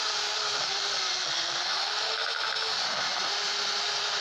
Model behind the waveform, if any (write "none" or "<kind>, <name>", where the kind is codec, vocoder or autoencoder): vocoder, BigVGAN v2